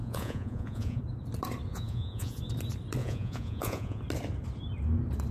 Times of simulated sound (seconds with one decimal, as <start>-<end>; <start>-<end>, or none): 0.0-1.0; 1.7-2.4; 3.0-4.0